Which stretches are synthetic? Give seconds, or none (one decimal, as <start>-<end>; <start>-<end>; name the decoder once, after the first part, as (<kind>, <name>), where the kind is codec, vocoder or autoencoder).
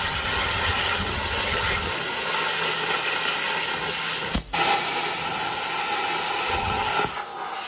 0.0-1.9 (vocoder, HiFi-GAN); 6.5-6.9